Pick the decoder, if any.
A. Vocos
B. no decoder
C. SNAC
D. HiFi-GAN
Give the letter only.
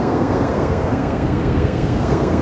C